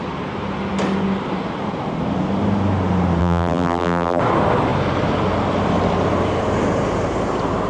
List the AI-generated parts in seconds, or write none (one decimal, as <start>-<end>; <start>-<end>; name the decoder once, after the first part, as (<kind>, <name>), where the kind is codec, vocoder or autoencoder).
3.2-4.2 (vocoder, BigVGAN v2)